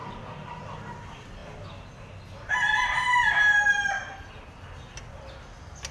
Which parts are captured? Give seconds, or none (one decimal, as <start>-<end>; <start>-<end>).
0.8-5.9